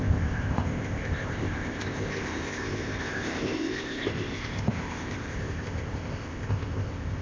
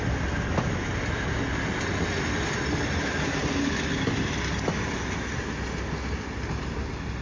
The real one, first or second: second